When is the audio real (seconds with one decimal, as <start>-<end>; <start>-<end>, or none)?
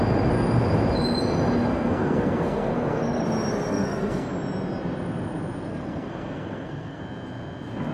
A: 0.0-1.7; 3.2-3.7; 4.3-5.7; 7.0-7.9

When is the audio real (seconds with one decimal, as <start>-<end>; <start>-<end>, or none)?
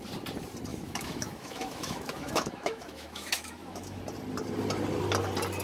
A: 0.0-0.7; 4.0-5.6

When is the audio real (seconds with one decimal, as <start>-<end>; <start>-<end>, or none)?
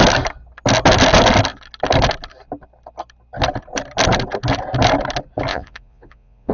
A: 0.0-5.5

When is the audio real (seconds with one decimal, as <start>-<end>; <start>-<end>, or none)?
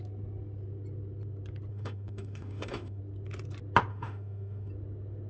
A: 0.0-1.7; 3.0-3.9; 4.7-5.3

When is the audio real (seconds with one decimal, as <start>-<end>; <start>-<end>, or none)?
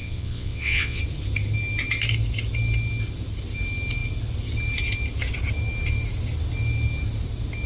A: 1.0-7.7